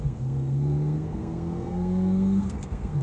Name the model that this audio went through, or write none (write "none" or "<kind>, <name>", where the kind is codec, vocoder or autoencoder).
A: codec, SNAC